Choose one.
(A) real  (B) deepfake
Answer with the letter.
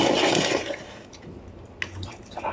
A